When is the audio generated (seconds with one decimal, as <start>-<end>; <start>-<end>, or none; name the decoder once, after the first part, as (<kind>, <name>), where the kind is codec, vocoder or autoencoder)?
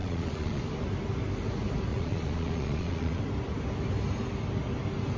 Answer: 0.0-0.6 (vocoder, Vocos); 1.9-3.2